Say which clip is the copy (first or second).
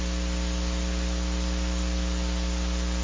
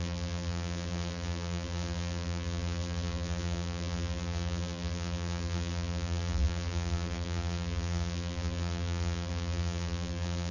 second